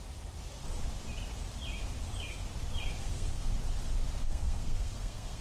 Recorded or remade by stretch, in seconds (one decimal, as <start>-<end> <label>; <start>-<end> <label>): 0.0-3.0 recorded; 3.0-3.5 remade; 3.5-4.2 recorded; 4.2-5.4 remade